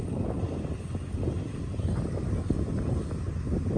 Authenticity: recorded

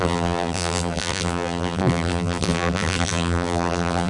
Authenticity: remade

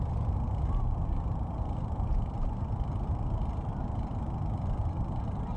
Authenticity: remade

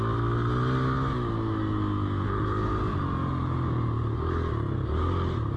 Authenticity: recorded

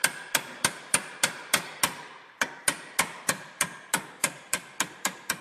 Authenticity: remade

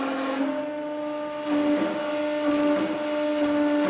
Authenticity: recorded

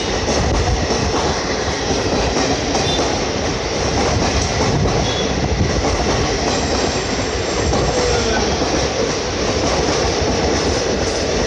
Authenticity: recorded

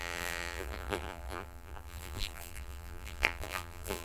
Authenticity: remade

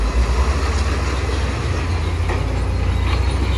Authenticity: recorded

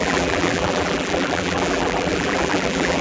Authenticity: remade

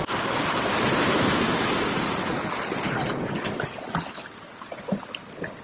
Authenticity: recorded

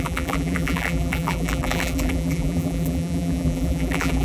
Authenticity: remade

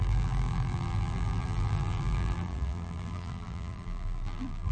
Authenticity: remade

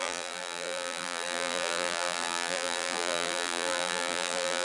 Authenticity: remade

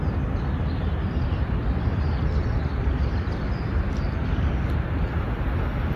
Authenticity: recorded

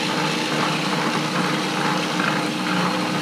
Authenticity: recorded